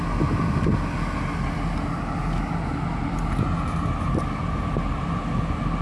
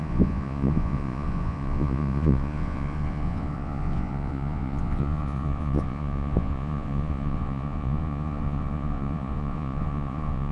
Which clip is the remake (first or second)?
second